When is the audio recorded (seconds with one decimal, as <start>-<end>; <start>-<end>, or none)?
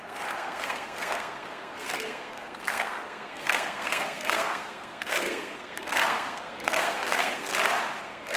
7.5-8.0